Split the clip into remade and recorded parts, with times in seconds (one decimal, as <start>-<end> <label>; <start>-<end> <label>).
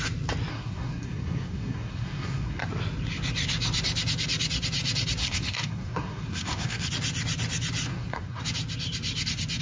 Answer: 0.0-0.5 recorded; 0.5-2.6 remade; 2.6-5.2 recorded; 5.2-6.9 remade; 6.9-7.9 recorded; 7.9-8.4 remade; 8.4-9.6 recorded